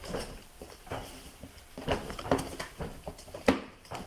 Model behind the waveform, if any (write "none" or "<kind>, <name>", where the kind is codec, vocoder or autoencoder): vocoder, BigVGAN v2